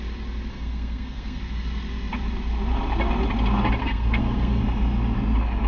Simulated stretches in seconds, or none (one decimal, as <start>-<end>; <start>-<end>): 0.5-1.4; 3.8-4.6